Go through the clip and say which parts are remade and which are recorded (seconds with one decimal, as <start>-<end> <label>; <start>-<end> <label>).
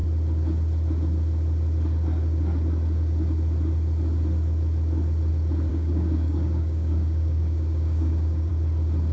0.0-5.7 recorded; 5.7-8.5 remade; 8.5-9.1 recorded